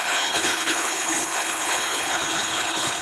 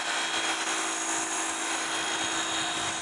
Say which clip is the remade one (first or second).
first